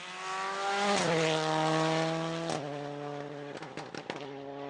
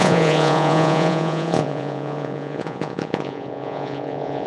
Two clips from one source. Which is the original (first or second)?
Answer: first